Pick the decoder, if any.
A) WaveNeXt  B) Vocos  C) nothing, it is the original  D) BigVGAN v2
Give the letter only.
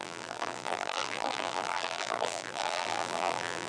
D